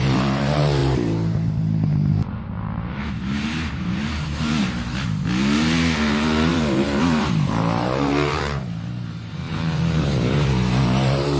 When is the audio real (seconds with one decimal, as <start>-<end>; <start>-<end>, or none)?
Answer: none

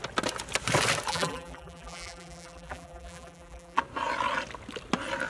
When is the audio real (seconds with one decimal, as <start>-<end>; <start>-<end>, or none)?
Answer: 0.0-1.1; 3.8-5.3

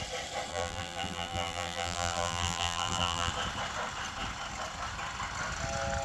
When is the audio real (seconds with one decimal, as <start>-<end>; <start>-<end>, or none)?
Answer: 0.0-0.5; 3.3-6.0